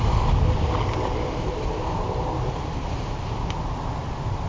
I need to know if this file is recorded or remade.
recorded